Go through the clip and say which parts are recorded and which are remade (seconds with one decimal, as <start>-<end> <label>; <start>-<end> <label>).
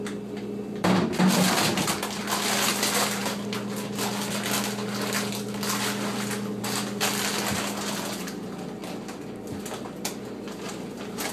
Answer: 0.0-11.3 recorded